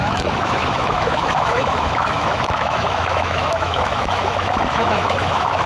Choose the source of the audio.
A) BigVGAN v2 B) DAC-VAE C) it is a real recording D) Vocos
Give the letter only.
B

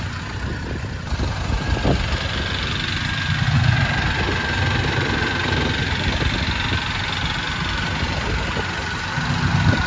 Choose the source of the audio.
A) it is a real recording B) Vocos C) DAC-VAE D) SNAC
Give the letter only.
A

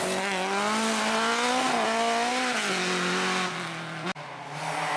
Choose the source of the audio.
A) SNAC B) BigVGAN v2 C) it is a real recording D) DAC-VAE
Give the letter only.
C